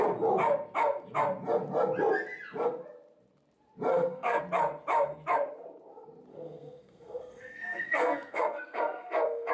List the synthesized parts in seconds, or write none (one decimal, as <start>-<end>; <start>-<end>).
3.9-4.4; 6.3-9.5